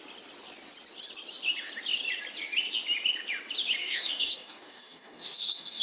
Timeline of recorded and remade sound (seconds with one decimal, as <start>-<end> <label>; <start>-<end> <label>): 0.0-3.8 recorded; 3.8-5.8 remade